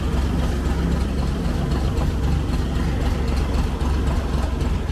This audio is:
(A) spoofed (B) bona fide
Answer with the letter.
B